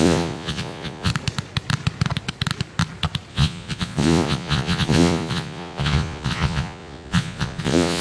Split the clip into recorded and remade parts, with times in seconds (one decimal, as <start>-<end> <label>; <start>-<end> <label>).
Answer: 0.0-1.1 remade; 1.1-3.3 recorded; 3.3-8.0 remade